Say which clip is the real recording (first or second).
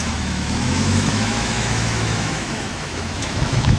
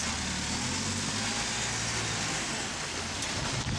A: second